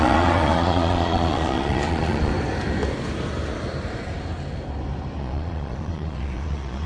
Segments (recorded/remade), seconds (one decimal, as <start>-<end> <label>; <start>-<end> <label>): 0.0-2.3 remade; 2.3-5.2 recorded; 5.2-6.9 remade